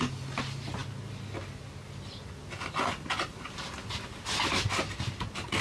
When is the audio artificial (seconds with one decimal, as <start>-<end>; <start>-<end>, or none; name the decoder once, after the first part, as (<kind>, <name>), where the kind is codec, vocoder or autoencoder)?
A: none